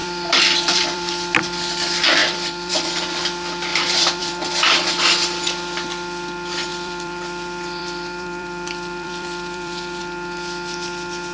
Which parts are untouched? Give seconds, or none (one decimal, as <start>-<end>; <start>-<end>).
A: 1.1-2.2; 3.2-3.7; 4.5-6.7; 10.0-11.3